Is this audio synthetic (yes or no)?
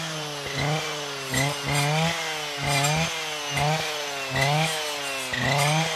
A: no